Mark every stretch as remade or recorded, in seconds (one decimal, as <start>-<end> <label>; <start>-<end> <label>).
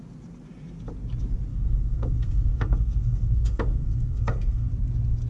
0.0-1.5 recorded; 1.5-4.7 remade; 4.7-5.3 recorded